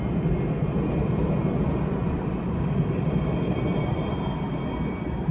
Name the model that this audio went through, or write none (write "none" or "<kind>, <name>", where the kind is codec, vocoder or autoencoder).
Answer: none